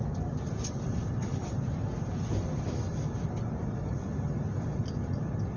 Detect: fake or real real